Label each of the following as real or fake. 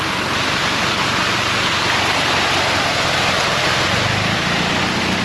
real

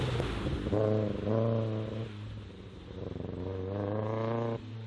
real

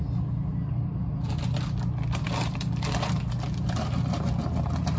real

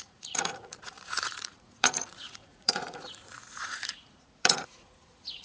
fake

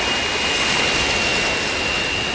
real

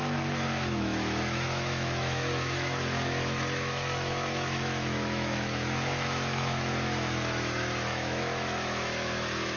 fake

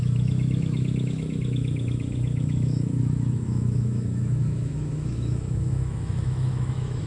fake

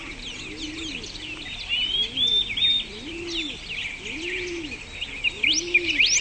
real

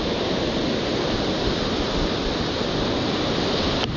real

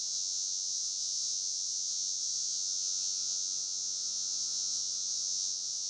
fake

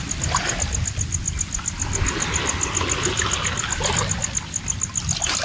real